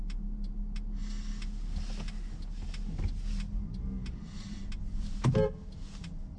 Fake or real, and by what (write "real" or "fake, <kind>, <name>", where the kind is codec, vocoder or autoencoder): real